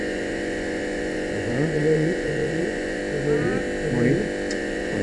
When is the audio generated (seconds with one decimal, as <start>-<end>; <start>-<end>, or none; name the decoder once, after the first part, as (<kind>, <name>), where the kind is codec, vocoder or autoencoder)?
0.0-3.0 (vocoder, Vocos); 4.5-5.0